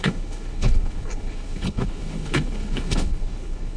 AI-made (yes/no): yes